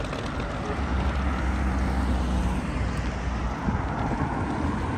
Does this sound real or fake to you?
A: real